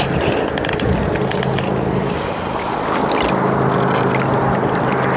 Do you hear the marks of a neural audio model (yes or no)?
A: no